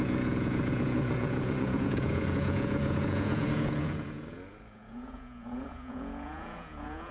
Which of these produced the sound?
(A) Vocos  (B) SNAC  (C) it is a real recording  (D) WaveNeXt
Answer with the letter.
A